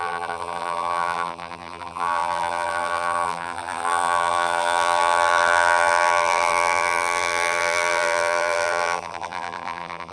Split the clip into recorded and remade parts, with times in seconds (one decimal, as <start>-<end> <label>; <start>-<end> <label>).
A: 0.0-10.1 remade